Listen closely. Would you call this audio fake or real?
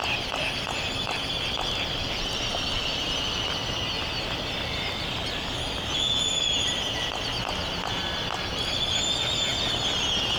real